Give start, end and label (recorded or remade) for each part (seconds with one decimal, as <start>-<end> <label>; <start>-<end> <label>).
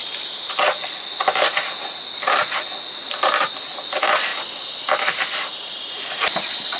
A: 0.0-0.7 remade; 0.7-6.8 recorded